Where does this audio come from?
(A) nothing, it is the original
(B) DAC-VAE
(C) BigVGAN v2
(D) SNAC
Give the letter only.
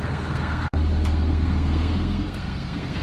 D